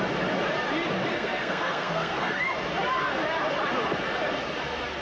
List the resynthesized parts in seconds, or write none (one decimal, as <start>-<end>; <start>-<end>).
1.1-2.4